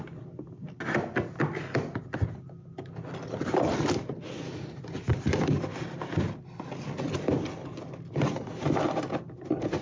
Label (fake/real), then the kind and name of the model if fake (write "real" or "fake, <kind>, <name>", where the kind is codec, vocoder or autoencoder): real